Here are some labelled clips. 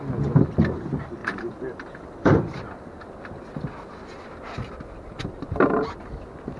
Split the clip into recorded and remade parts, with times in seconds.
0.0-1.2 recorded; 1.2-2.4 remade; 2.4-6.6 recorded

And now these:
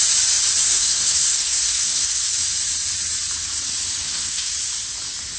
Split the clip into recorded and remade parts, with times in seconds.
0.0-0.6 recorded; 0.6-2.3 remade; 2.3-4.0 recorded; 4.0-4.5 remade; 4.5-5.4 recorded

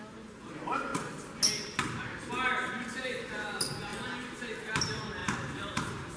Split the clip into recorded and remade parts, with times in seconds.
0.0-0.9 remade; 0.9-2.3 recorded; 2.3-3.9 remade; 3.9-4.8 recorded; 4.8-6.2 remade

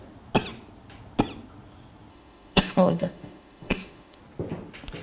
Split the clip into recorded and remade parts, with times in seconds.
0.0-2.1 recorded; 2.1-4.2 remade; 4.2-5.0 recorded

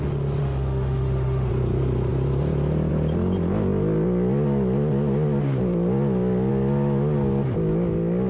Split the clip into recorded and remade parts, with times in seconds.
0.0-0.4 recorded; 0.4-1.5 remade; 1.5-8.3 recorded

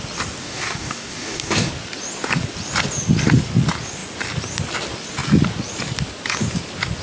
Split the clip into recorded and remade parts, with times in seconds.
0.0-0.4 recorded; 0.4-1.7 remade; 1.7-7.0 recorded

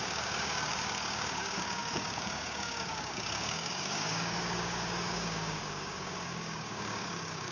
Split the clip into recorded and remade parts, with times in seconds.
0.0-7.5 remade